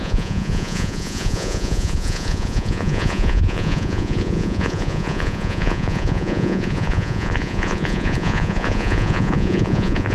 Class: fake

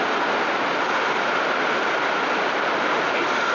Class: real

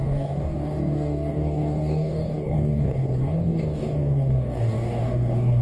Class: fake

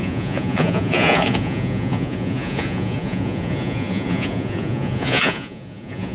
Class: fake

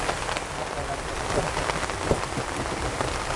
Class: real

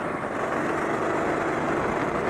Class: real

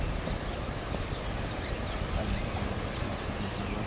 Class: real